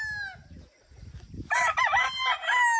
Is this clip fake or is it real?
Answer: real